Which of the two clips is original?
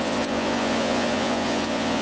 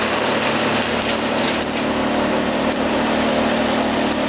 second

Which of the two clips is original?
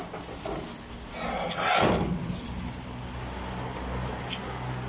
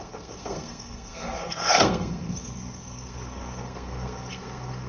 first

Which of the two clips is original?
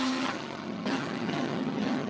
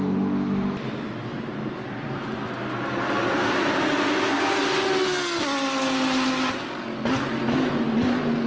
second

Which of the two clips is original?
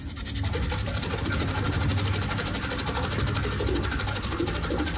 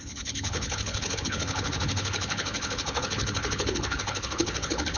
first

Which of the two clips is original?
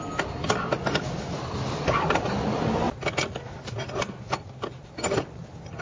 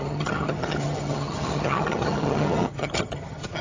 first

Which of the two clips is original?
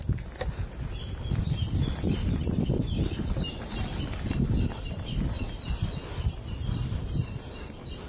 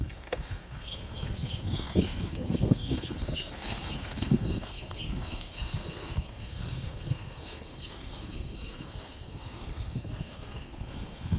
first